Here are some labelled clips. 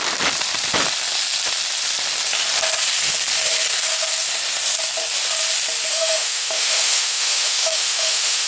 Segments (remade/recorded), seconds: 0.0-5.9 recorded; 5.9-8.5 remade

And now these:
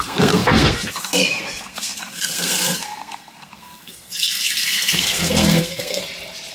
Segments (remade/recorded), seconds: 0.0-6.0 remade; 6.0-6.5 recorded

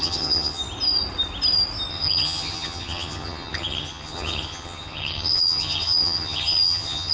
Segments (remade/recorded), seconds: 0.0-0.6 remade; 0.6-1.9 recorded; 1.9-7.1 remade

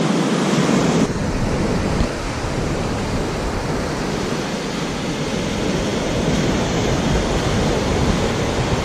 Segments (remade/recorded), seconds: 0.0-5.9 recorded; 5.9-6.6 remade; 6.6-8.8 recorded

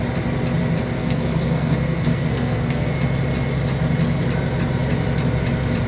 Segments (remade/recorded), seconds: 0.0-1.0 recorded; 1.0-2.9 remade; 2.9-5.9 recorded

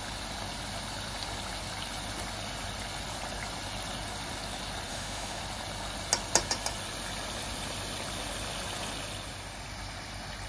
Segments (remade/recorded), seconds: 0.0-4.9 recorded; 4.9-5.4 remade; 5.4-10.5 recorded

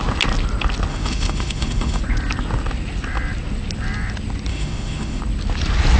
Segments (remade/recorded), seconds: 0.0-0.9 recorded; 0.9-2.0 remade; 2.0-4.5 recorded; 4.5-5.2 remade; 5.2-6.0 recorded